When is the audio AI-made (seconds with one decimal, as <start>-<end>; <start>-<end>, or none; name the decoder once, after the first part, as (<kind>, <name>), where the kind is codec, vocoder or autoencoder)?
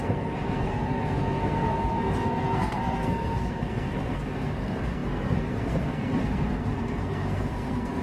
0.0-8.0 (codec, SNAC)